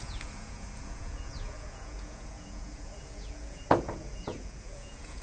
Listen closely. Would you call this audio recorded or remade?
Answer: remade